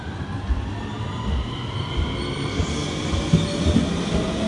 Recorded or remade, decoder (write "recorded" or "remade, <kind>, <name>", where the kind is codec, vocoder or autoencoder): recorded